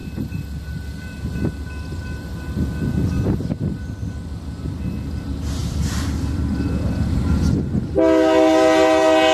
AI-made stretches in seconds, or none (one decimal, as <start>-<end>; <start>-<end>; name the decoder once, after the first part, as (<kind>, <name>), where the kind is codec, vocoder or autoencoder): 0.0-3.8 (vocoder, BigVGAN v2); 5.6-7.2